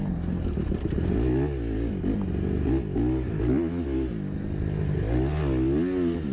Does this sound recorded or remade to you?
recorded